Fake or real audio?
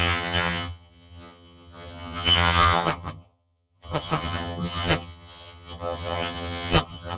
fake